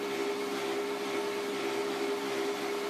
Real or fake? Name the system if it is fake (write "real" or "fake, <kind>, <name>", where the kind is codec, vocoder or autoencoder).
real